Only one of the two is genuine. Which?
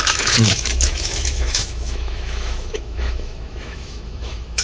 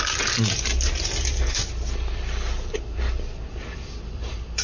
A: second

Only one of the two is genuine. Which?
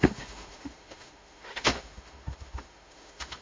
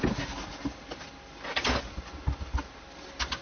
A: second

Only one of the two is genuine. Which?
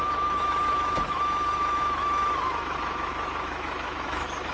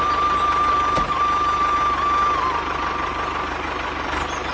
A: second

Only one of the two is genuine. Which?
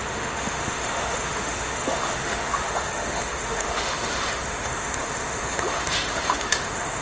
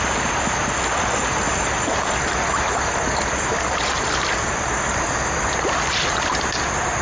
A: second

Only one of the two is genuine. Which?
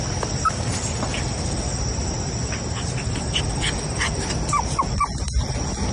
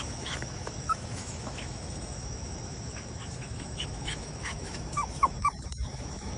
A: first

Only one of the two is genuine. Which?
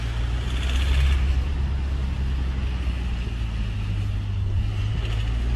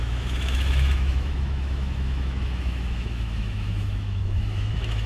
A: first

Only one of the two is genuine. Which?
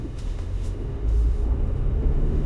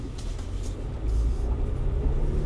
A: second